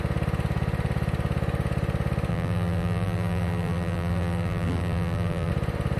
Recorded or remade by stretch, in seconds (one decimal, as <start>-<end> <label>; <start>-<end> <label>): 0.0-2.3 recorded; 2.3-5.5 remade; 5.5-6.0 recorded